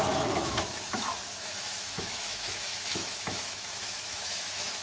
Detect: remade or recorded remade